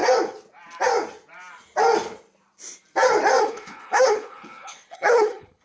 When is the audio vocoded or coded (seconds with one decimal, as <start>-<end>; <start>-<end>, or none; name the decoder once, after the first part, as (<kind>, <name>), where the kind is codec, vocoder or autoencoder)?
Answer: 3.4-5.6 (codec, HILCodec)